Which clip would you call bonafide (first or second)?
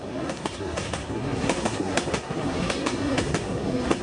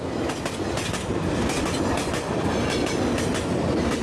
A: second